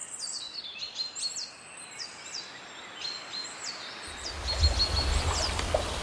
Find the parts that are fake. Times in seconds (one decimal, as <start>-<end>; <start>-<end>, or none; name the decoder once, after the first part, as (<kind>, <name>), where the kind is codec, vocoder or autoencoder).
none